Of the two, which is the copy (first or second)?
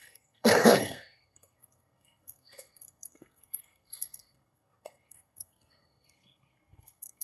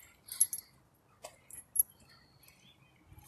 first